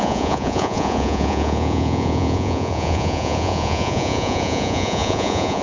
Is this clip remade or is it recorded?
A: remade